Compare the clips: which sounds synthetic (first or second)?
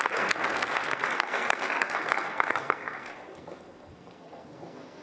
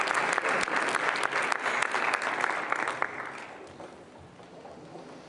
first